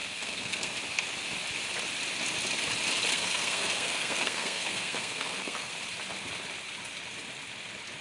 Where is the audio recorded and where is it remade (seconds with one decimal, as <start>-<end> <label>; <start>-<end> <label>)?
0.0-0.7 remade; 0.7-3.1 recorded; 3.1-5.7 remade; 5.7-8.0 recorded